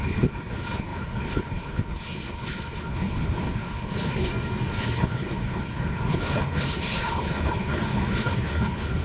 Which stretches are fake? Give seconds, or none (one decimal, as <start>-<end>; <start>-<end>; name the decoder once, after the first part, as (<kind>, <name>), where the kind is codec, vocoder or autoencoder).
0.0-4.3 (codec, HILCodec); 4.8-9.0